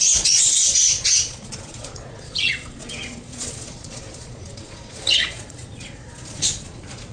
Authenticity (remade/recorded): remade